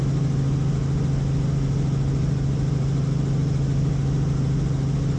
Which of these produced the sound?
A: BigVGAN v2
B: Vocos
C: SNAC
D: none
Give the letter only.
D